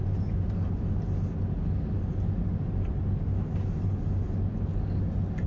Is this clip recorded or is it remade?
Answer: recorded